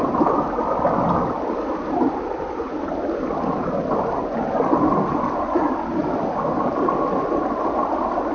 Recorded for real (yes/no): yes